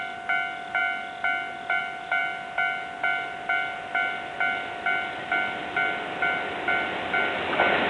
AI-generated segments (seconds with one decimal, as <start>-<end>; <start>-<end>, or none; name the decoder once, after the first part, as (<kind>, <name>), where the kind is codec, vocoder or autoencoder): none